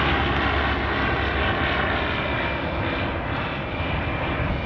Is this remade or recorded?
recorded